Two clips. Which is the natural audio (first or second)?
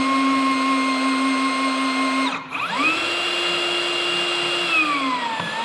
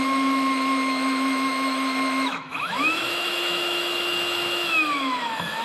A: first